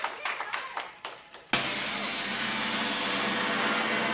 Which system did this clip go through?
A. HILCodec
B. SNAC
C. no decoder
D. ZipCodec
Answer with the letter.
C